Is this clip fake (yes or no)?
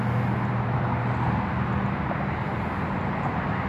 no